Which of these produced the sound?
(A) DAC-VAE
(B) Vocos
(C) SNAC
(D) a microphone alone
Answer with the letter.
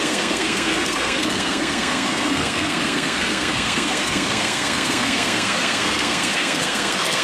C